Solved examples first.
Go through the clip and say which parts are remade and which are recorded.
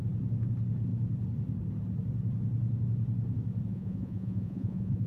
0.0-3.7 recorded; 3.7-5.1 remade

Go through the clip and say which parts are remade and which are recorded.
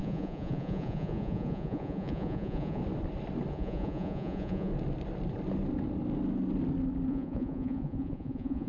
0.0-2.8 remade; 2.8-3.5 recorded; 3.5-4.7 remade; 4.7-7.1 recorded; 7.1-8.7 remade